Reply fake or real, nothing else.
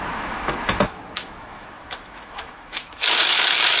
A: fake